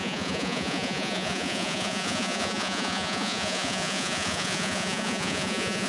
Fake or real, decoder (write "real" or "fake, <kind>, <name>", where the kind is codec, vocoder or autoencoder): fake, vocoder, Vocos